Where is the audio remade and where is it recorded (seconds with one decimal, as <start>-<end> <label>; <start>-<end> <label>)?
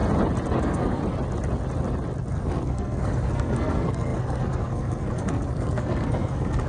0.0-0.6 recorded; 0.6-1.0 remade; 1.0-2.3 recorded; 2.3-6.7 remade